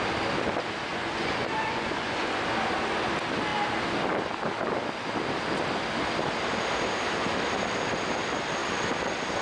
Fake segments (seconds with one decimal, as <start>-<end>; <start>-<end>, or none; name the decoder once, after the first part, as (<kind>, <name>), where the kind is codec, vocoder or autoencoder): 0.9-2.4 (vocoder, Vocos)